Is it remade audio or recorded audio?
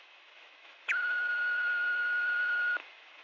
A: remade